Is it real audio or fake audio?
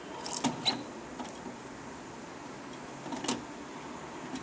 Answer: real